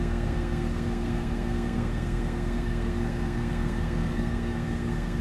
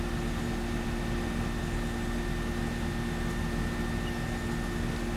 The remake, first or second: first